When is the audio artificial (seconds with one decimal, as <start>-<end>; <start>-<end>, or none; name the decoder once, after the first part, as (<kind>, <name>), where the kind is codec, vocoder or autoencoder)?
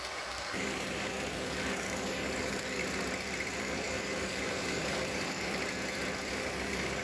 0.0-2.8 (codec, DAC); 3.6-5.6; 6.3-7.0